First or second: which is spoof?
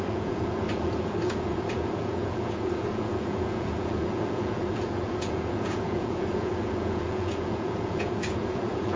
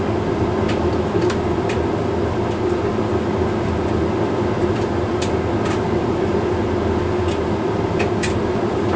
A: first